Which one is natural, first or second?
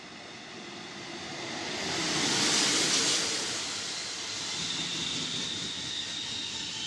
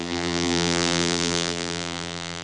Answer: first